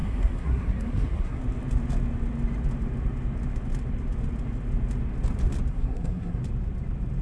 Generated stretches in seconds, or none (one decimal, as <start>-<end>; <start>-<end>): 0.0-1.4; 5.7-6.4